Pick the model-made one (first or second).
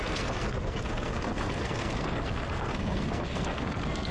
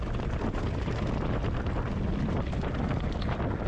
first